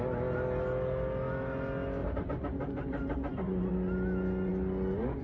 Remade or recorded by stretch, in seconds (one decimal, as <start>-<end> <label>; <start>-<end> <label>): 0.0-2.0 recorded; 2.0-3.7 remade; 3.7-5.2 recorded